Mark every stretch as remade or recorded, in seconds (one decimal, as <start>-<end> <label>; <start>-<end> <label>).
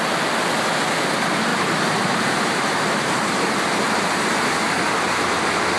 0.0-1.5 recorded; 1.5-4.8 remade; 4.8-5.8 recorded